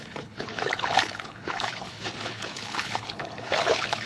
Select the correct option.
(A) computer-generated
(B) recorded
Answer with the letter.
A